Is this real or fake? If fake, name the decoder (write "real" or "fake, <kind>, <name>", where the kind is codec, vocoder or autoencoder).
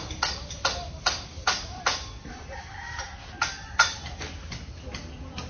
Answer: real